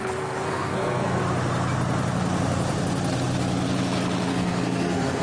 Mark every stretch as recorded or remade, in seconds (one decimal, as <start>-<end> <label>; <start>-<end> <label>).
0.0-1.2 remade; 1.2-4.3 recorded; 4.3-5.2 remade

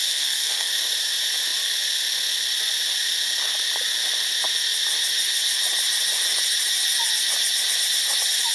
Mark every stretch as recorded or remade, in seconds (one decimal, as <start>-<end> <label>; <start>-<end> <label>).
0.0-0.7 remade; 0.7-8.5 recorded